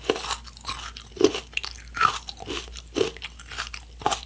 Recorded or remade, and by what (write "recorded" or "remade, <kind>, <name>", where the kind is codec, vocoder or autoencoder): recorded